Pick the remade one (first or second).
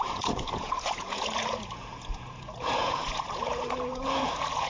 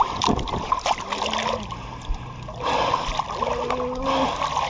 first